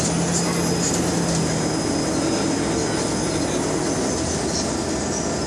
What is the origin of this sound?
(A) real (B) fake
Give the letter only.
A